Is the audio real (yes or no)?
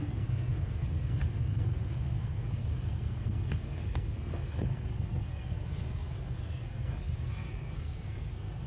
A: no